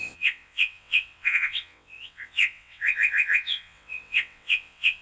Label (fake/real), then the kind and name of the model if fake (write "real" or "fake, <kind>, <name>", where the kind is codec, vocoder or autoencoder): fake, vocoder, WaveNeXt